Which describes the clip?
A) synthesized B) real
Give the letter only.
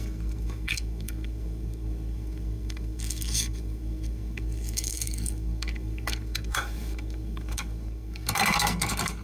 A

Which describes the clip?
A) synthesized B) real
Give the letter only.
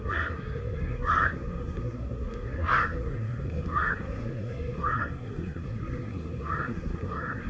A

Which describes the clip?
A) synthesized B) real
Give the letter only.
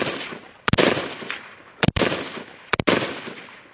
B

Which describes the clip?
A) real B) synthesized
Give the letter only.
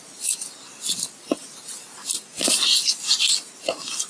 A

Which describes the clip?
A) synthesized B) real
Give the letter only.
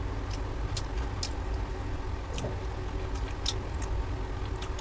B